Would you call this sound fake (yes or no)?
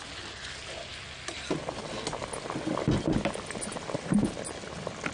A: no